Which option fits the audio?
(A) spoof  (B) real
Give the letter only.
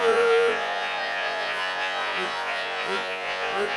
A